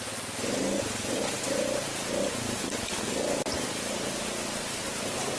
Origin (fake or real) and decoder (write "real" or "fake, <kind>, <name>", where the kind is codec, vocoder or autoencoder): real